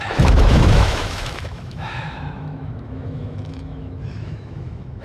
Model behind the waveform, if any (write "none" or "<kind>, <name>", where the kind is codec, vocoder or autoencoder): autoencoder, DAC-VAE